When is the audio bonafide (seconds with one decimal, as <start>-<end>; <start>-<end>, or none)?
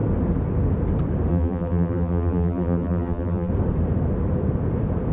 0.0-1.3; 3.5-5.1